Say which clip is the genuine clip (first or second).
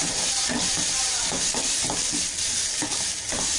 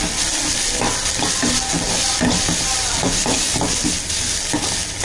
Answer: second